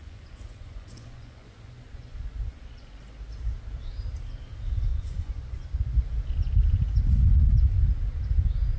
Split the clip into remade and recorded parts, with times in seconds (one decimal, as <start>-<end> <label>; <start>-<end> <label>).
0.0-3.0 remade; 3.0-4.9 recorded; 4.9-6.0 remade; 6.0-8.8 recorded